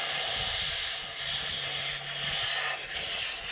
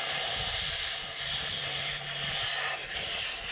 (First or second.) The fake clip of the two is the second